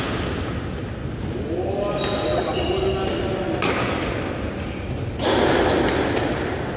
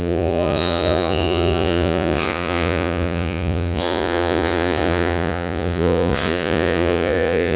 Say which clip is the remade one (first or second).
second